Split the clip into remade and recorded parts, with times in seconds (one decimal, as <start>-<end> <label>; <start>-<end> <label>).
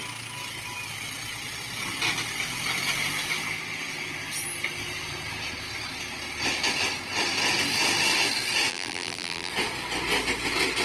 0.0-8.7 recorded; 8.7-9.5 remade; 9.5-10.8 recorded